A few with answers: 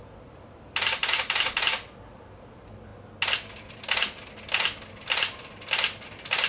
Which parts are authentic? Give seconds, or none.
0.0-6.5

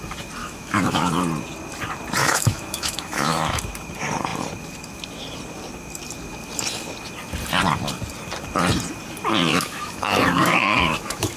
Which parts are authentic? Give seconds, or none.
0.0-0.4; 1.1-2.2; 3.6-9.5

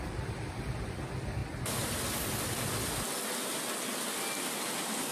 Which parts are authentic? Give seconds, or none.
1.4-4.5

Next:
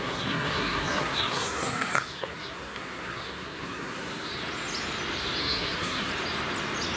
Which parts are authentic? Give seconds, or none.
4.3-5.4; 6.1-7.0